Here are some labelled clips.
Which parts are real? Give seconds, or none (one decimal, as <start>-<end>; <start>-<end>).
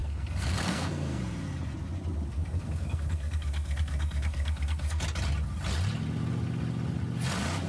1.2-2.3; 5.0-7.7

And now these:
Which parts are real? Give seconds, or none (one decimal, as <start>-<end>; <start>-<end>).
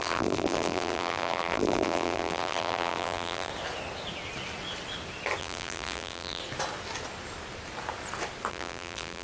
3.5-5.4; 6.4-8.5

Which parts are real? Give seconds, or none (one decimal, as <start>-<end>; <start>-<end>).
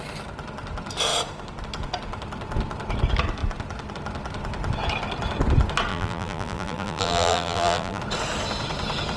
0.0-5.9; 8.0-9.2